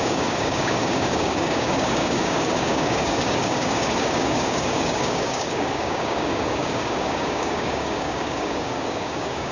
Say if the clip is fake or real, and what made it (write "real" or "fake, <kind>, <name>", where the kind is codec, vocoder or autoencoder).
fake, codec, DAC